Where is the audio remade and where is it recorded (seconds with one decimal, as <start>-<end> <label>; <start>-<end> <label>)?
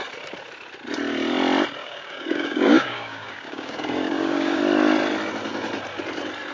0.0-1.8 recorded; 1.8-4.6 remade; 4.6-6.5 recorded